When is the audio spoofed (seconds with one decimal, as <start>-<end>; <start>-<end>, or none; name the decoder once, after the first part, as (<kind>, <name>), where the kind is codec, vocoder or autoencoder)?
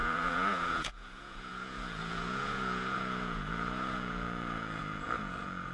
0.0-5.7 (vocoder, Vocos)